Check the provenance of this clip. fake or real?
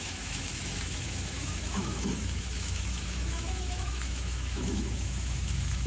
fake